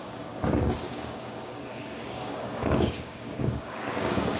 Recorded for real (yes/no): no